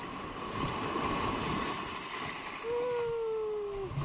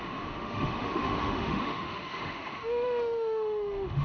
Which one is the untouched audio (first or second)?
first